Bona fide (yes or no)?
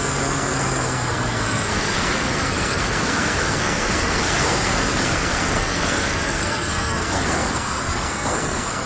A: no